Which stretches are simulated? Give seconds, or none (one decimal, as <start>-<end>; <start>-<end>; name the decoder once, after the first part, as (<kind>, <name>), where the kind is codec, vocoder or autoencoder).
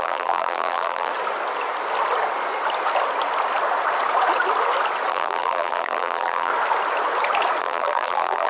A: 0.0-1.1 (vocoder, BigVGAN v2); 5.1-6.5; 7.6-8.5